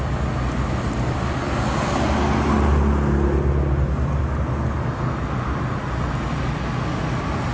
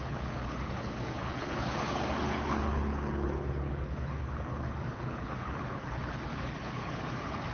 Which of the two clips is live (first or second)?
first